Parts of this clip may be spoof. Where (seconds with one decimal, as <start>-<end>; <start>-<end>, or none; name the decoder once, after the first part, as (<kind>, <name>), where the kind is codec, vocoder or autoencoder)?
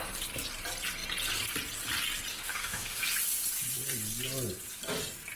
2.3-3.0 (autoencoder, DAC-VAE)